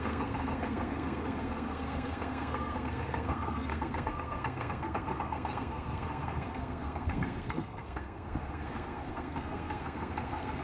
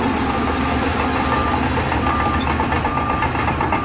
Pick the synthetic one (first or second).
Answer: first